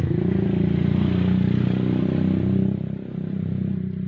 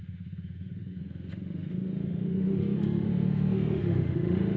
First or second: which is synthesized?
second